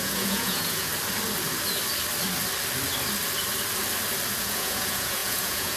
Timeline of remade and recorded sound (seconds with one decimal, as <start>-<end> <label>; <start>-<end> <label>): 0.0-0.9 remade; 0.9-4.4 recorded; 4.4-5.8 remade